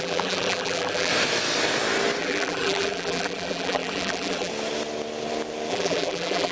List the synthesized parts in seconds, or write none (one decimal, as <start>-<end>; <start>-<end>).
0.0-1.1; 2.2-4.5; 5.7-6.5